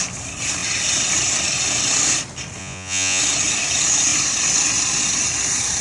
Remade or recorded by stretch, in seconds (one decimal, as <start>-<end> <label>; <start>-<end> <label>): 0.0-2.6 recorded; 2.6-3.2 remade; 3.2-5.8 recorded